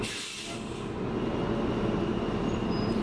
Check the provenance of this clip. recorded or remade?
recorded